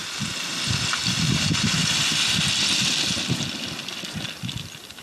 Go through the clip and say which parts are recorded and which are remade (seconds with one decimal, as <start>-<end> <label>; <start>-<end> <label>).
0.0-0.5 recorded; 0.5-1.8 remade; 1.8-5.0 recorded